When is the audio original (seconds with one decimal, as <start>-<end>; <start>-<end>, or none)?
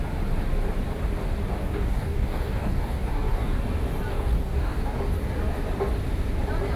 0.0-1.6; 3.6-4.1; 5.0-6.8